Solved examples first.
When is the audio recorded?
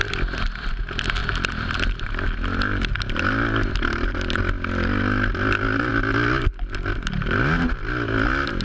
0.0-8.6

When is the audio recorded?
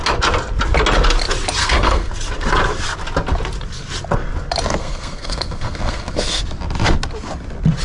0.0-1.6; 2.1-4.8; 6.4-7.8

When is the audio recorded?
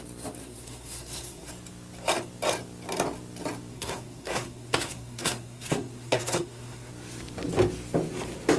0.0-0.4; 1.5-3.7; 6.9-8.6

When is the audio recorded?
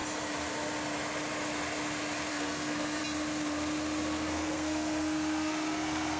0.0-2.3; 3.0-4.3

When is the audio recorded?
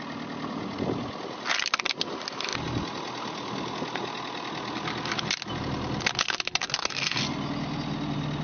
0.0-6.6; 7.2-8.4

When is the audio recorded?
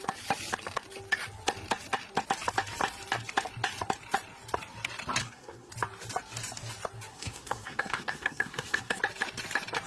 0.0-5.2; 5.7-7.1; 9.0-9.9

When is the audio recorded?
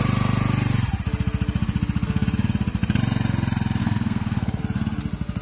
0.0-3.8; 4.6-5.4